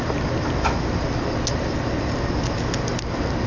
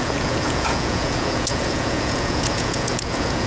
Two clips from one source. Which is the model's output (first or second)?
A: second